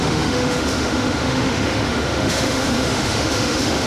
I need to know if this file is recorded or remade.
remade